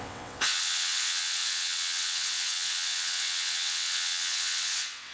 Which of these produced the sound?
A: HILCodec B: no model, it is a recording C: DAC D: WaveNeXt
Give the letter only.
D